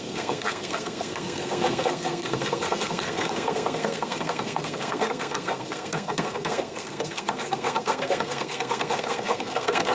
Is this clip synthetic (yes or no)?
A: yes